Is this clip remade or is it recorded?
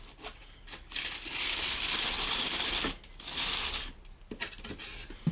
recorded